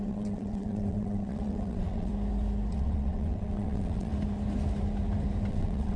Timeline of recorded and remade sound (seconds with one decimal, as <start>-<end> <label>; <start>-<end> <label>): 0.0-2.1 remade; 2.1-2.7 recorded; 2.7-4.1 remade; 4.1-5.5 recorded; 5.5-6.0 remade